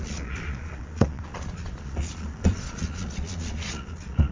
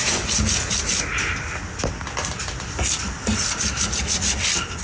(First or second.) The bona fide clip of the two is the second